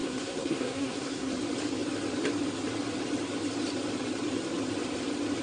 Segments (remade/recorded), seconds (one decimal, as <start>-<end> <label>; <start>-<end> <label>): 0.0-1.3 remade; 1.3-5.4 recorded